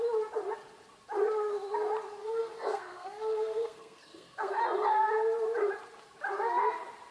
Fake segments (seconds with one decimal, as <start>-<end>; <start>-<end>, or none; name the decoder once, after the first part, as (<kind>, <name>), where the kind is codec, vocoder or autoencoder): 2.2-4.5 (codec, SNAC)